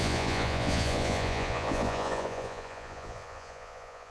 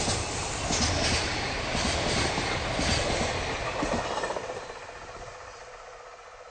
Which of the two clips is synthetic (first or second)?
first